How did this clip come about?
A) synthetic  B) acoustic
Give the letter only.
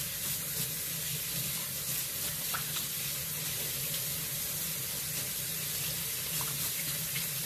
B